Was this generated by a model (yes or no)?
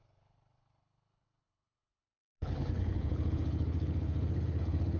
yes